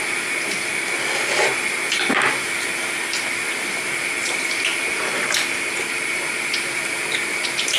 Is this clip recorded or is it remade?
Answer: remade